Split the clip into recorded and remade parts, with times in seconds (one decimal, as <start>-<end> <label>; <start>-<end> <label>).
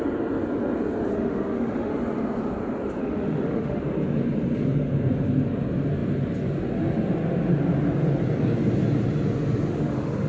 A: 0.0-1.1 recorded; 1.1-1.9 remade; 1.9-3.0 recorded; 3.0-3.8 remade; 3.8-9.7 recorded; 9.7-10.3 remade